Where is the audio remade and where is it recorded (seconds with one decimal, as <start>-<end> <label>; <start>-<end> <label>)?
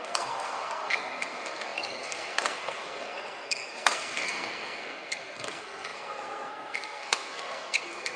0.0-8.2 remade